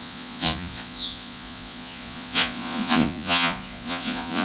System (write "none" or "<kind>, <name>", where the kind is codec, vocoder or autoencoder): vocoder, Vocos